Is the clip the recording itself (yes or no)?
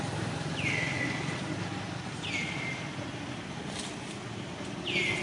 yes